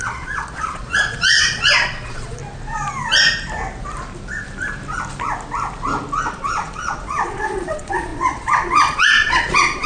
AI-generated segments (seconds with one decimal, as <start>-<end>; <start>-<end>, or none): 0.0-2.4; 6.3-9.9